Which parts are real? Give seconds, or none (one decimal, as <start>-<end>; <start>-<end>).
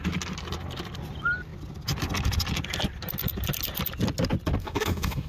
0.0-4.6